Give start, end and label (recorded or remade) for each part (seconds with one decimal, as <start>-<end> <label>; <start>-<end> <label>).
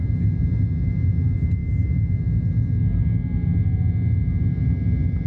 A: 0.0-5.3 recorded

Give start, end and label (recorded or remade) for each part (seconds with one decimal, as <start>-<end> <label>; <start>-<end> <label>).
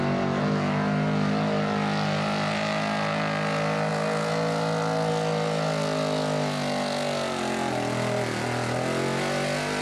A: 0.0-9.8 recorded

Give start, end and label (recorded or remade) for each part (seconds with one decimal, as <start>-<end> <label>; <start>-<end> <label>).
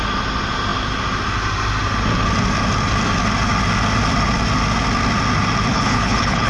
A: 0.0-5.7 recorded; 5.7-6.5 remade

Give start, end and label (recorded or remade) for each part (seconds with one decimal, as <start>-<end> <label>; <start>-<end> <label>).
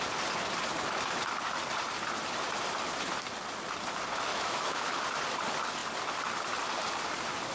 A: 0.0-4.3 recorded; 4.3-5.0 remade; 5.0-7.5 recorded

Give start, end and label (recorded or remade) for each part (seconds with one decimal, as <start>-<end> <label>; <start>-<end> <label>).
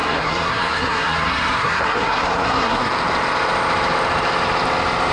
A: 0.0-2.9 remade; 2.9-5.1 recorded